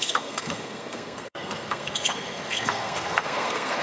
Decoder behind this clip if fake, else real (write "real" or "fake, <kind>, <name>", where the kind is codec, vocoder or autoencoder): fake, codec, SNAC